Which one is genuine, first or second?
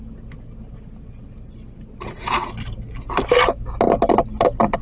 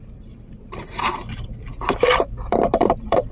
first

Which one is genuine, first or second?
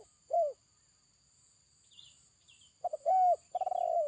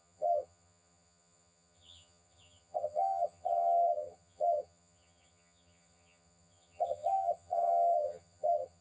first